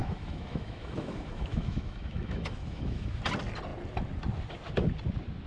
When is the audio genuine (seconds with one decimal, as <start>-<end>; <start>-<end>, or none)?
3.2-5.5